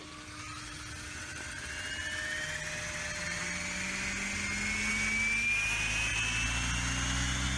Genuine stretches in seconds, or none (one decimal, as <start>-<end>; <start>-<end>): 0.0-7.6